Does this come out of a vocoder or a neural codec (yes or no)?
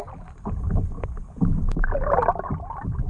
no